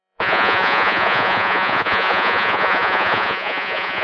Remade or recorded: remade